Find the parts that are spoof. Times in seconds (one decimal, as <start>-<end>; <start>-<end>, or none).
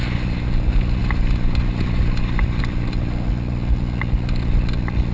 none